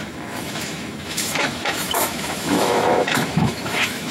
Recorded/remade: remade